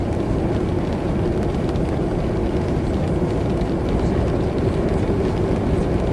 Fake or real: real